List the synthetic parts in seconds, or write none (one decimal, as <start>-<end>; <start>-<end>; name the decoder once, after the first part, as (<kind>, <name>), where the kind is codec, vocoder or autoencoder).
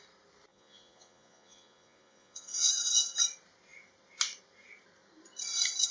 0.5-2.7 (vocoder, Vocos)